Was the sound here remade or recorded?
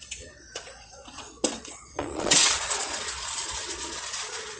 remade